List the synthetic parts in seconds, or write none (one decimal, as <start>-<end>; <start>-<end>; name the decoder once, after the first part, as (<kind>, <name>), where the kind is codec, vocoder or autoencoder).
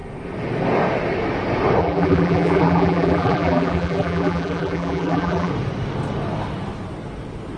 1.8-5.5 (vocoder, BigVGAN v2)